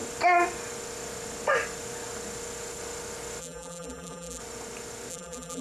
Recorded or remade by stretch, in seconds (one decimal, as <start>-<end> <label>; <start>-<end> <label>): 0.0-3.4 recorded; 3.4-4.4 remade; 4.4-5.1 recorded; 5.1-5.6 remade